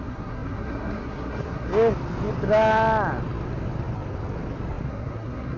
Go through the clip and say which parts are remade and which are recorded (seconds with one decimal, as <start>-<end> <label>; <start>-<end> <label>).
0.0-1.7 remade; 1.7-4.8 recorded; 4.8-5.6 remade